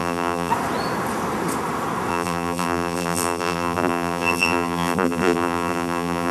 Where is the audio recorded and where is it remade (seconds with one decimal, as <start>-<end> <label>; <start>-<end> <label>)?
0.0-0.5 remade; 0.5-2.1 recorded; 2.1-6.3 remade